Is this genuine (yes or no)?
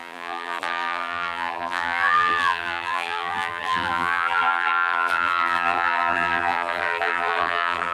no